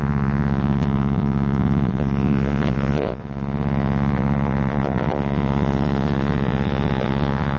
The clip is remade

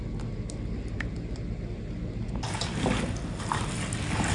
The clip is recorded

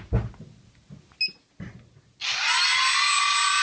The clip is recorded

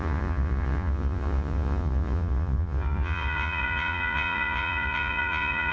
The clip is remade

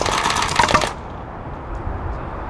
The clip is recorded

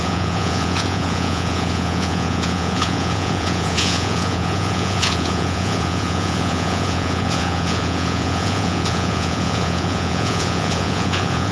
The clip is remade